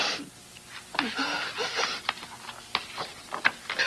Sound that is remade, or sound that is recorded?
recorded